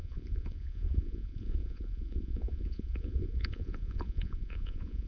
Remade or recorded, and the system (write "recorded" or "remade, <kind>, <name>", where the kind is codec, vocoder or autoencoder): remade, vocoder, Vocos